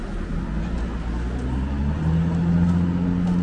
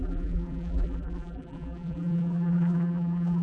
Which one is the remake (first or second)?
second